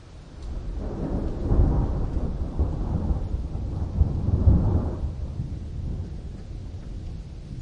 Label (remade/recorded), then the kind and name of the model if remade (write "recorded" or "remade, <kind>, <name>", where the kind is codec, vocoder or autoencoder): recorded